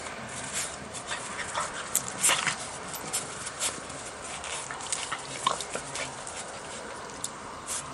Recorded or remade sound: remade